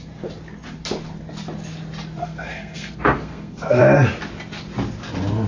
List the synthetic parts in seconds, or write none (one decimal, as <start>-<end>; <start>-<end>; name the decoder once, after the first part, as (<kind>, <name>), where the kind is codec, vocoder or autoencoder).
2.2-3.8 (codec, SNAC)